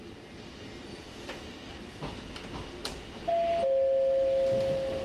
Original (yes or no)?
yes